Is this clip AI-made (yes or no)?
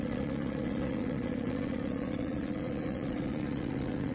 yes